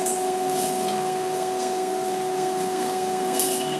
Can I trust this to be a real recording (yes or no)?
no